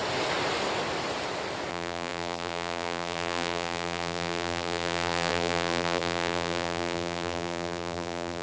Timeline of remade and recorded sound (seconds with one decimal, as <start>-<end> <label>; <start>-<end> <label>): 0.0-1.7 recorded; 1.7-8.4 remade